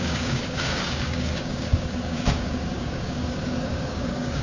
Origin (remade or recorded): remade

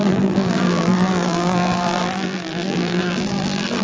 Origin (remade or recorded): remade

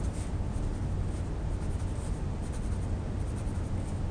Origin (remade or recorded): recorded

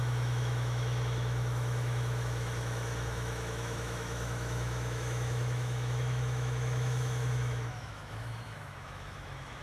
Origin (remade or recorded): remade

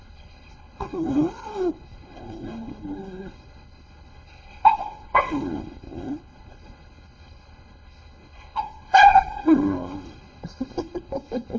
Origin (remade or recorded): remade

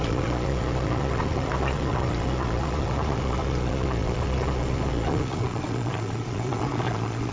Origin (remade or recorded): remade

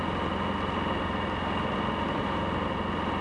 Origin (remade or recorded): recorded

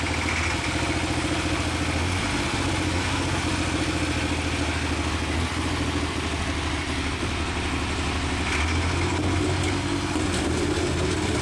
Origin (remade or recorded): recorded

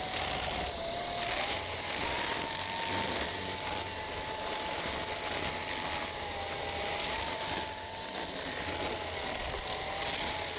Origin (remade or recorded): recorded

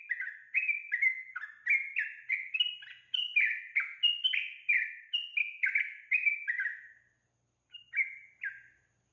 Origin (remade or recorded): recorded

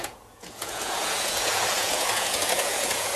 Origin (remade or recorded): remade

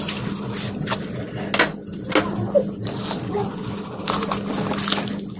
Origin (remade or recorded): recorded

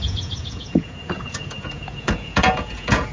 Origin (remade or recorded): remade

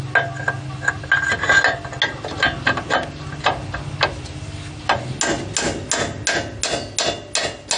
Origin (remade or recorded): recorded